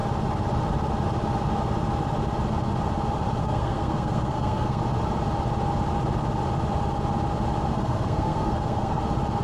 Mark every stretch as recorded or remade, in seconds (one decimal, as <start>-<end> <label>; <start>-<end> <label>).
0.0-3.4 recorded; 3.4-4.8 remade; 4.8-7.7 recorded; 7.7-9.0 remade; 9.0-9.4 recorded